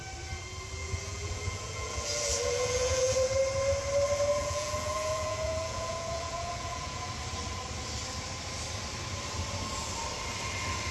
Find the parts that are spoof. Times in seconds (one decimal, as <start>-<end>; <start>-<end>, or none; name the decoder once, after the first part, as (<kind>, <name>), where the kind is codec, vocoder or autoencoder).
0.8-3.4 (vocoder, Vocos); 4.4-7.1